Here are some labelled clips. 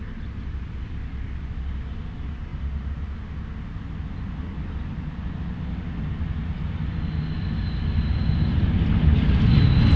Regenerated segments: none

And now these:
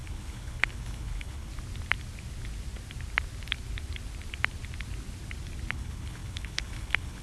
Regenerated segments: 0.0-1.5 (codec, HILCodec); 5.7-7.2

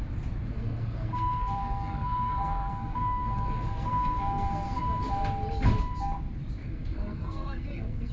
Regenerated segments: 0.4-4.8 (codec, SNAC); 6.6-8.1

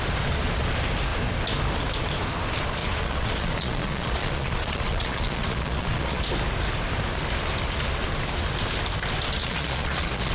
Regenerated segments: 2.8-6.2 (vocoder, Vocos); 9.4-10.3

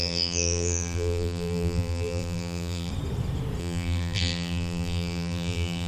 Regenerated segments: 0.0-2.9 (vocoder, BigVGAN v2); 3.6-5.9

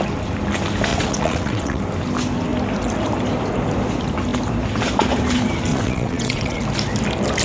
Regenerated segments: 0.9-1.8 (vocoder, WaveNeXt); 5.7-6.6

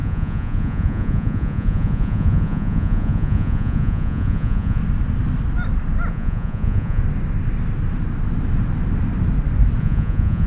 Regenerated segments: 0.0-4.8 (vocoder, Vocos); 6.1-7.0; 9.8-10.5

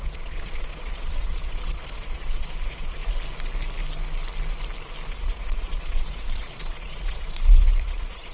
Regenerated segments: 0.0-3.0 (vocoder, Vocos); 5.1-8.3